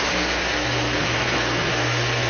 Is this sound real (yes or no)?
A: yes